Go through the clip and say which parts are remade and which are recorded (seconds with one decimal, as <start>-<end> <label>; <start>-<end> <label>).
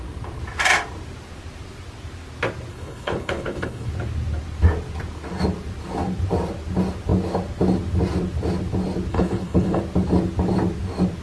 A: 0.0-2.7 recorded; 2.7-3.9 remade; 3.9-9.1 recorded; 9.1-9.8 remade; 9.8-11.2 recorded